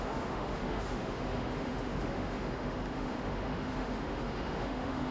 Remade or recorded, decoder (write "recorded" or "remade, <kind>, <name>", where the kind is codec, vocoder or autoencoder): remade, autoencoder, DAC-VAE